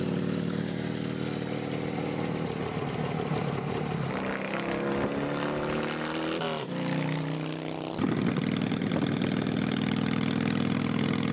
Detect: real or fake real